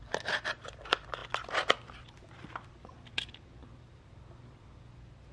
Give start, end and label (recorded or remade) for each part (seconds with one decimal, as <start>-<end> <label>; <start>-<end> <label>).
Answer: 0.0-1.2 remade; 1.2-2.3 recorded; 2.3-5.3 remade